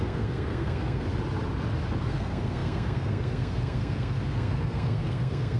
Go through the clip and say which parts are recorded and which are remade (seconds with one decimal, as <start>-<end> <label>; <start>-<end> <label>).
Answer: 0.0-1.1 remade; 1.1-2.0 recorded; 2.0-5.6 remade